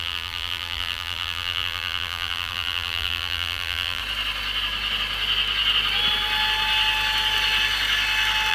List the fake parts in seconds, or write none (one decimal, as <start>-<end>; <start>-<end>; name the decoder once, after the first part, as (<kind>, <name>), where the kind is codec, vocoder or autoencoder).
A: 0.0-4.0 (vocoder, BigVGAN v2)